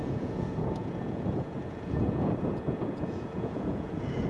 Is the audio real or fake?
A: fake